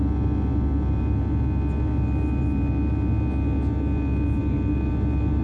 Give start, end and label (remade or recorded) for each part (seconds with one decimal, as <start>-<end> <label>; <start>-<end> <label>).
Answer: 0.0-5.4 recorded